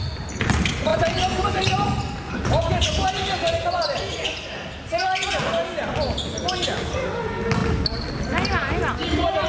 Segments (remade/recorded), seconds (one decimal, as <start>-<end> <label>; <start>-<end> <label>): 0.0-9.5 recorded